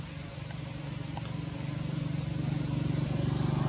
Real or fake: real